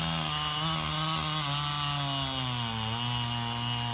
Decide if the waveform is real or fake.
real